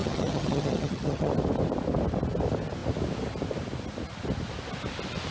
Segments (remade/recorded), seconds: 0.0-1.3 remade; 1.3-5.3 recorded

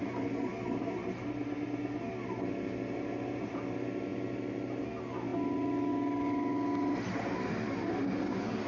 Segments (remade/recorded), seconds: 0.0-8.7 recorded

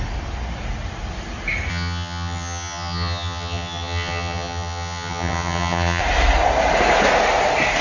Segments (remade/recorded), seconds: 0.0-1.7 recorded; 1.7-6.0 remade; 6.0-7.8 recorded

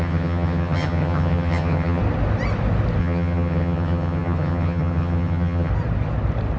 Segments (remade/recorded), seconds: 0.0-2.0 remade; 2.0-3.0 recorded; 3.0-5.7 remade; 5.7-6.6 recorded